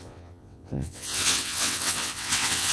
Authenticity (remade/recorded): remade